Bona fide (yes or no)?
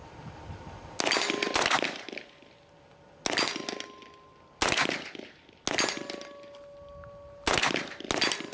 yes